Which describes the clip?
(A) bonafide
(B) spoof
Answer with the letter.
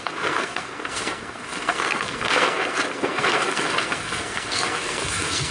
B